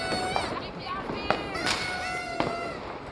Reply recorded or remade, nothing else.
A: recorded